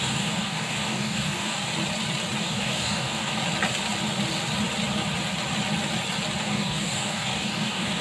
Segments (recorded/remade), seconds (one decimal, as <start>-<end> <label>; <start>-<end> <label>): 0.0-1.7 remade; 1.7-2.4 recorded; 2.4-3.4 remade; 3.4-6.4 recorded; 6.4-8.0 remade